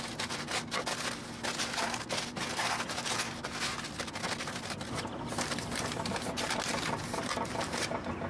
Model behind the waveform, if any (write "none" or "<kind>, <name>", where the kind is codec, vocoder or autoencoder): none